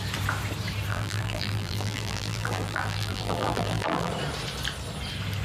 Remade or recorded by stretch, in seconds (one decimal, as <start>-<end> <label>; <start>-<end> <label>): 0.0-0.9 recorded; 0.9-4.1 remade; 4.1-5.4 recorded